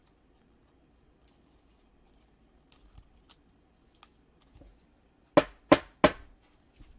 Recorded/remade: recorded